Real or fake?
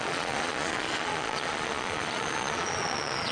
fake